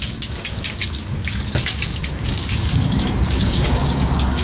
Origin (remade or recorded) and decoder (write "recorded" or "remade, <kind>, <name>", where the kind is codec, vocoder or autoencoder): remade, codec, DAC